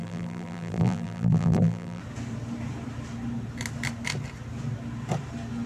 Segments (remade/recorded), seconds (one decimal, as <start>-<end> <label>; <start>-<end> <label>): 0.0-2.0 remade; 2.0-5.7 recorded